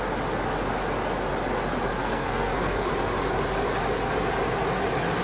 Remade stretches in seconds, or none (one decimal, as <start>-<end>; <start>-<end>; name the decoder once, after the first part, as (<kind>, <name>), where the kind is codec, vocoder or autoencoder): 2.0-2.9 (codec, SNAC)